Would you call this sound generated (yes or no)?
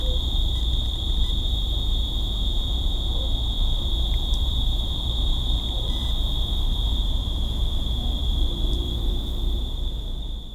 yes